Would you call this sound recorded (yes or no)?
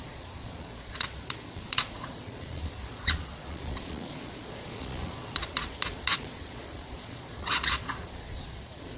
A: no